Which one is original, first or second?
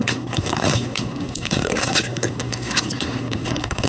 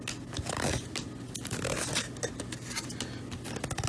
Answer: second